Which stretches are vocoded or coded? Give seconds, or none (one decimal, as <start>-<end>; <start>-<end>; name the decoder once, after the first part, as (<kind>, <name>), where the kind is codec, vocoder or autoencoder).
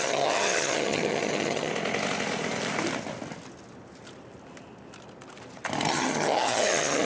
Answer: 0.0-1.7 (vocoder, HiFi-GAN); 5.9-7.0